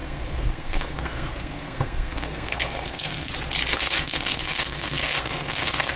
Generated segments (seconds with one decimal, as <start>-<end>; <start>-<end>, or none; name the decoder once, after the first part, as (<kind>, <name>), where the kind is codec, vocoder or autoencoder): 0.0-3.3 (codec, SNAC); 3.7-6.0